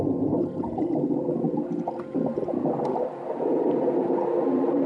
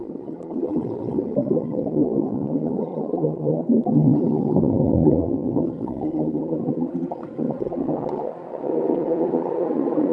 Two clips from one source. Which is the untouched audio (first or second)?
first